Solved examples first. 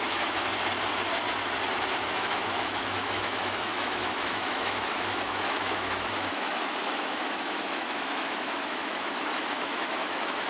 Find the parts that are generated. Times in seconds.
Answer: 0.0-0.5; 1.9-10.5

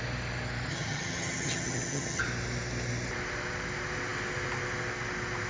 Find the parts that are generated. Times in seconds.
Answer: 0.7-2.2

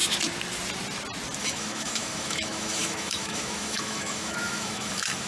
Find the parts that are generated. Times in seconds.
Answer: 1.4-5.3

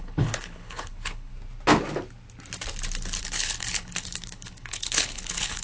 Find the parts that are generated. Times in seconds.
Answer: 0.0-1.3; 3.2-5.6

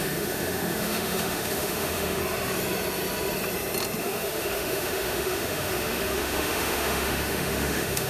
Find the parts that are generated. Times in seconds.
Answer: 0.0-2.2; 4.0-8.1

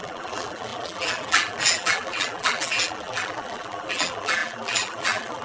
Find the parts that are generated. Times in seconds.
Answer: 0.0-5.4

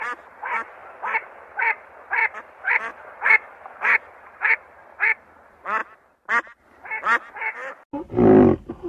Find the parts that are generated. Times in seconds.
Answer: 0.0-5.8

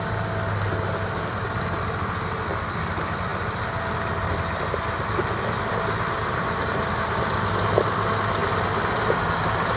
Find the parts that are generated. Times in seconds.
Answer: none